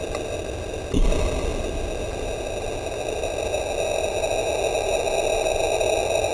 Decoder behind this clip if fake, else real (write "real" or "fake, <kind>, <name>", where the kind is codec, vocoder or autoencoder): real